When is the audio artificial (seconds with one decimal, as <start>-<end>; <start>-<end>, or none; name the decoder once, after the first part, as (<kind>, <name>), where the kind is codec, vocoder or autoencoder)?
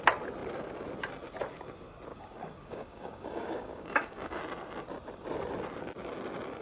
2.1-4.4 (codec, DAC)